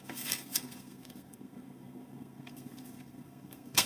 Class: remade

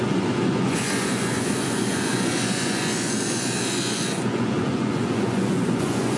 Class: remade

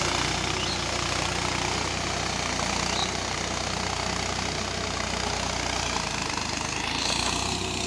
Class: recorded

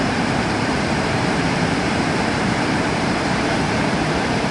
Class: remade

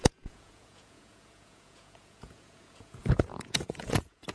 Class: remade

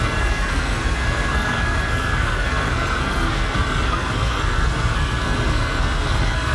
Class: remade